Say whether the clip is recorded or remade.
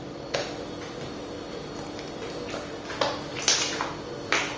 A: recorded